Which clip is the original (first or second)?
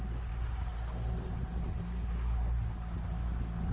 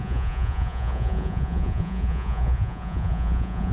first